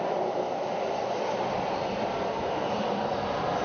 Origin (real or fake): real